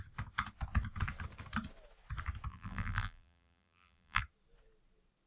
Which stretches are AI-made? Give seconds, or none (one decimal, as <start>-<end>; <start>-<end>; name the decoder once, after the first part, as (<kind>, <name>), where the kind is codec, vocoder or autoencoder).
2.5-4.2 (vocoder, BigVGAN v2)